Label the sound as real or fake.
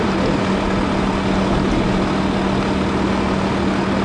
real